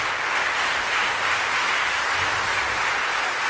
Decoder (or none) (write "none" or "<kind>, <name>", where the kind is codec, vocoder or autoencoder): none